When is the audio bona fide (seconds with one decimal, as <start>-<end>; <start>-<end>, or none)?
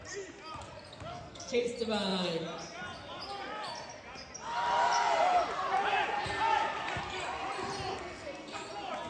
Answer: 0.0-1.1; 1.7-7.9; 8.6-9.1